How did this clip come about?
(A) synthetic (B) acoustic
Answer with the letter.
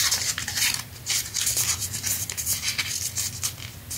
B